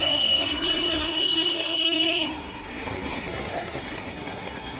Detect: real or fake fake